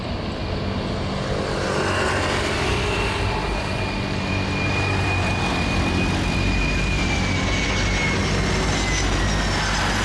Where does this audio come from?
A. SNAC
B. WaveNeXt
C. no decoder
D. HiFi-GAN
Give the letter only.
C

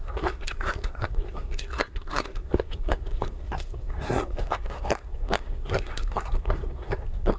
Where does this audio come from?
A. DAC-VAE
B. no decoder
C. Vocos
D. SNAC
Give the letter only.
D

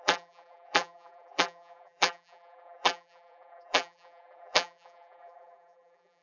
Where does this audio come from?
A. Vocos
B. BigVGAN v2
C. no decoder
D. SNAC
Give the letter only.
B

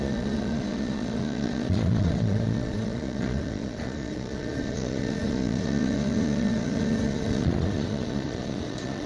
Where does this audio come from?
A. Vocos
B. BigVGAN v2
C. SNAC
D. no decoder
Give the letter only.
A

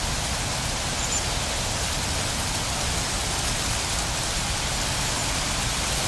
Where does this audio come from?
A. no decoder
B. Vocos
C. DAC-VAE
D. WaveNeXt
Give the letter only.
A